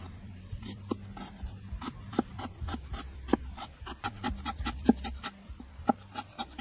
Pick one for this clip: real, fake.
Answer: fake